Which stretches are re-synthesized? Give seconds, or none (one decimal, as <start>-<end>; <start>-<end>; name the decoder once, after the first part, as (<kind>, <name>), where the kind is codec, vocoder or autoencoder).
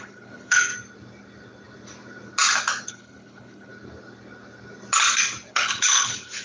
0.0-0.7 (codec, HILCodec); 2.9-3.7; 5.5-6.4